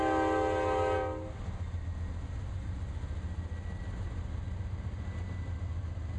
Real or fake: real